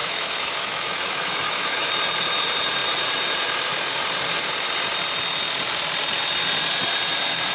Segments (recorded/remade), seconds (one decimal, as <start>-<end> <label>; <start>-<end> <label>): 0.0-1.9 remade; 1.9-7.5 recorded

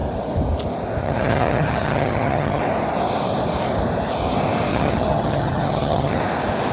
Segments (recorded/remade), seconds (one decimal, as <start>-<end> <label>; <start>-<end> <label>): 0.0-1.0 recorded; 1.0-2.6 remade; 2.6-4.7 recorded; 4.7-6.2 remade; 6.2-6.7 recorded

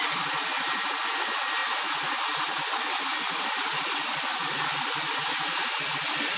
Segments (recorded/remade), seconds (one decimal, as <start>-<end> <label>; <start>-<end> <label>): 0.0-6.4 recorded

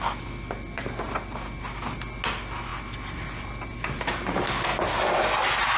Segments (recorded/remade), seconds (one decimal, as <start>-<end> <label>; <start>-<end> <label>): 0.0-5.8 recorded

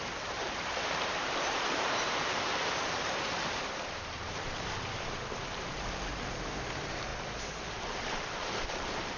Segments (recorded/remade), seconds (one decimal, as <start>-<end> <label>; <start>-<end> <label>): 0.0-7.1 remade; 7.1-7.8 recorded; 7.8-9.2 remade

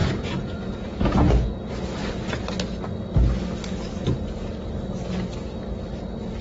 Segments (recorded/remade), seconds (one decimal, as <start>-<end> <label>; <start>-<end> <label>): 0.0-1.6 remade; 1.6-6.4 recorded

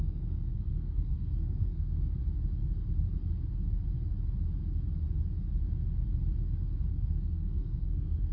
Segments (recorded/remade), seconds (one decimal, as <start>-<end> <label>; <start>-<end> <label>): 0.0-2.2 remade; 2.2-6.9 recorded; 6.9-8.3 remade

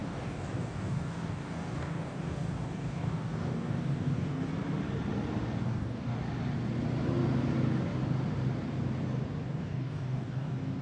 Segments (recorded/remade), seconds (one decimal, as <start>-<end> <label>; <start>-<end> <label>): 0.0-4.5 remade; 4.5-5.6 recorded; 5.6-6.1 remade; 6.1-9.5 recorded; 9.5-10.8 remade